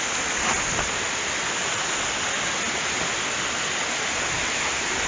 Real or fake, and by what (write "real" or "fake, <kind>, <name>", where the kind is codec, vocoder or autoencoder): real